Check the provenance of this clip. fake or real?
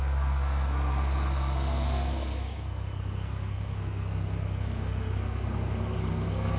fake